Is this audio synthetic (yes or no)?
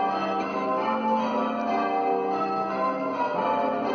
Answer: no